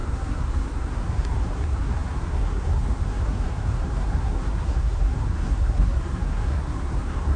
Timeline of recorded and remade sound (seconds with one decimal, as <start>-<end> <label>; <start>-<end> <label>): 0.0-7.4 remade